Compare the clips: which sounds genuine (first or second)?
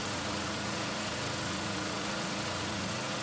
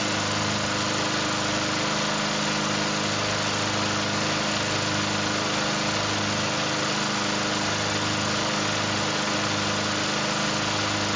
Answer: second